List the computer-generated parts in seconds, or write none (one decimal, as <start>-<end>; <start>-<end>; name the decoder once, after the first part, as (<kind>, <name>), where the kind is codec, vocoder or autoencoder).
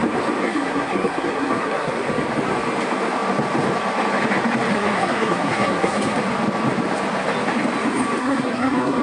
0.4-1.9 (codec, SNAC); 4.7-6.2; 8.2-9.0